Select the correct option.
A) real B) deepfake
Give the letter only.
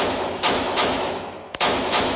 B